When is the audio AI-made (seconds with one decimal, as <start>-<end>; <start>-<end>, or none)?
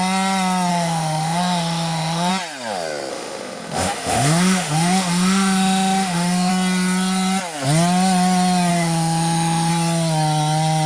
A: 0.7-2.3; 3.1-6.5; 8.7-9.7